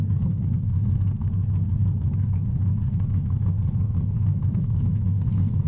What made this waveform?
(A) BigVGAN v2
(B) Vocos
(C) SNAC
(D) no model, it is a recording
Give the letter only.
C